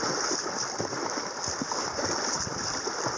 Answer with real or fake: real